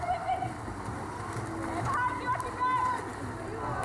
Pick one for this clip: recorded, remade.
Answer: recorded